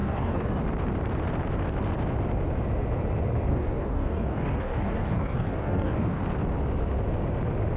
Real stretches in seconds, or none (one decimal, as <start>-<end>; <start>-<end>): 0.6-3.5; 6.2-7.8